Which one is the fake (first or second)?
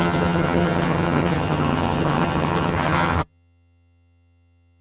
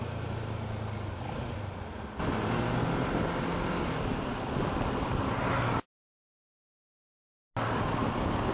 first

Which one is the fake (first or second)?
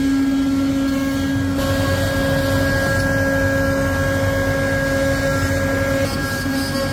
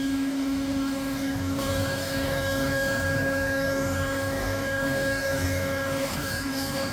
second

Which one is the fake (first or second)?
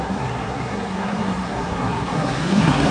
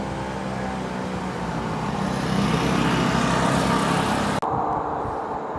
first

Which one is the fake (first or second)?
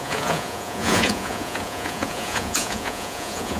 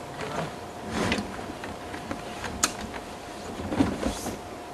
first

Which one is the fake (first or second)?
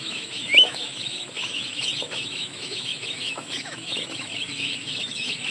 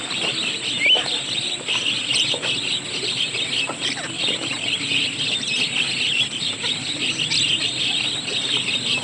first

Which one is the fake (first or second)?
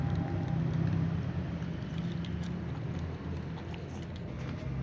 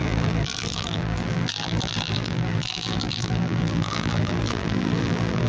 second